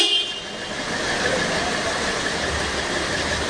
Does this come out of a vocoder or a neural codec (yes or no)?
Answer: yes